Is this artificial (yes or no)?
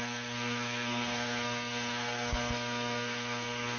yes